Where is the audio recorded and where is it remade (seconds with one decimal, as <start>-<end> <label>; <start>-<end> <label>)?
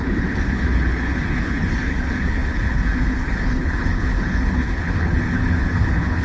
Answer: 0.0-6.2 remade